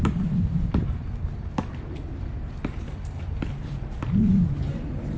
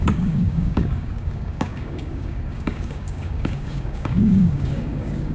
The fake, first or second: second